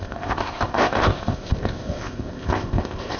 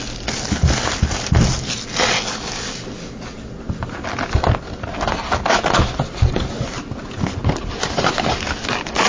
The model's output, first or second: first